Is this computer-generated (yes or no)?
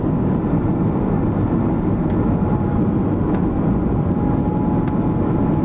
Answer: no